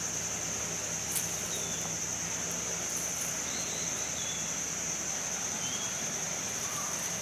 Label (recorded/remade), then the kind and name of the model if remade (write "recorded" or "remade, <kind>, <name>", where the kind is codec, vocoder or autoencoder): recorded